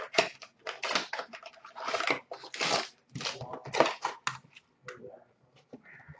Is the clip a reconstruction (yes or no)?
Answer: no